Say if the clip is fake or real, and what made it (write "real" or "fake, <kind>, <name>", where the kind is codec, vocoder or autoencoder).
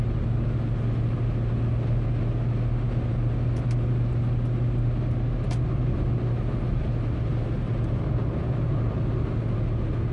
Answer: real